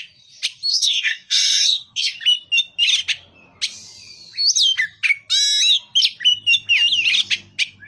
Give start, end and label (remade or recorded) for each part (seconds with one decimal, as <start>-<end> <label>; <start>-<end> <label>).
0.0-0.7 recorded; 0.7-2.1 remade; 2.1-7.9 recorded